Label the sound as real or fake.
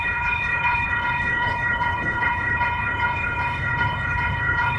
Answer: fake